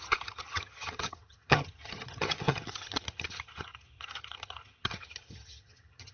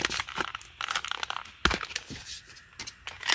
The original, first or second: second